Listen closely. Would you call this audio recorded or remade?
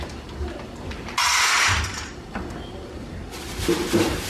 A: recorded